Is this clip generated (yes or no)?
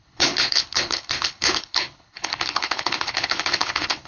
yes